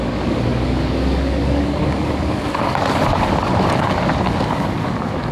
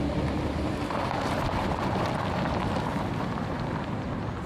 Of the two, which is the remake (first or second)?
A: first